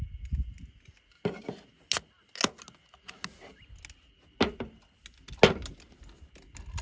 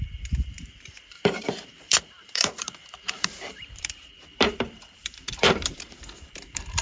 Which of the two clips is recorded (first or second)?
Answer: first